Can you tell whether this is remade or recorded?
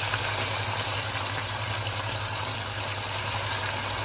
recorded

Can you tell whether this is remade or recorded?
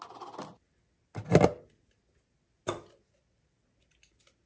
recorded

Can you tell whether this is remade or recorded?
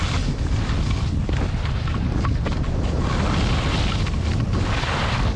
recorded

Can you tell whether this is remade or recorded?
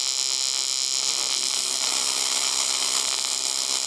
recorded